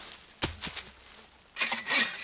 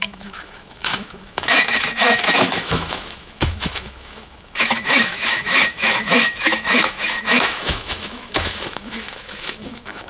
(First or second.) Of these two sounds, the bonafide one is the first